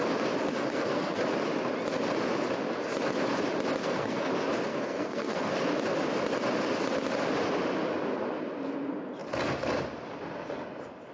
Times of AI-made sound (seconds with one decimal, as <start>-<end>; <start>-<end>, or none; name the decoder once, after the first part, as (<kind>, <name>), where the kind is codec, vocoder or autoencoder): 0.5-1.2 (codec, SNAC); 3.8-4.3; 4.7-5.5